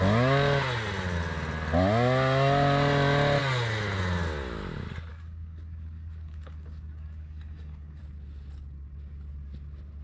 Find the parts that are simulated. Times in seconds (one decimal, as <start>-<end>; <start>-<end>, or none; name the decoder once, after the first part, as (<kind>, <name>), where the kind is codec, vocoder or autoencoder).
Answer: 5.1-8.0 (codec, DAC)

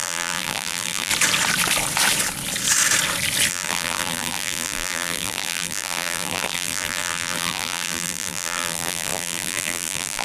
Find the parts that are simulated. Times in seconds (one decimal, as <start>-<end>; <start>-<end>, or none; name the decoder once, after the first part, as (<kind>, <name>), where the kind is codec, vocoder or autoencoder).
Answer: 0.0-1.1 (vocoder, BigVGAN v2); 3.5-10.2

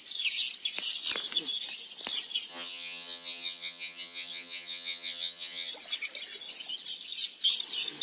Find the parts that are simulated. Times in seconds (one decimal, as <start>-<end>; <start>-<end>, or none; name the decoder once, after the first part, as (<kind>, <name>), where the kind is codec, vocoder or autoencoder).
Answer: 2.5-5.7 (vocoder, HiFi-GAN)